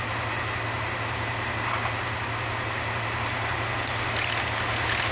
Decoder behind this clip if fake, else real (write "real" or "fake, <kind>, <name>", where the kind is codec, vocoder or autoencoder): real